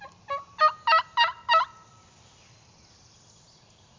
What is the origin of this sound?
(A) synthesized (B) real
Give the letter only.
B